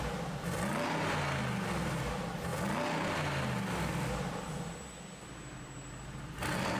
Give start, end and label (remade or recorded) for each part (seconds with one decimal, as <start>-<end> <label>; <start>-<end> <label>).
0.0-6.8 recorded